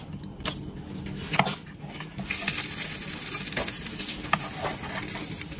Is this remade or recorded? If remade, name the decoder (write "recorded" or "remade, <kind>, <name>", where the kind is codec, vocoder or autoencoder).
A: recorded